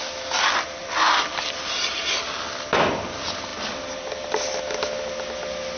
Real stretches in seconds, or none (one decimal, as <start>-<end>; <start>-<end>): 0.0-0.8; 1.7-3.5; 4.5-5.8